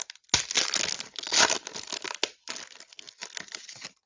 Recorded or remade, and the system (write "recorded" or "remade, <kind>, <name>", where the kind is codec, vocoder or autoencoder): recorded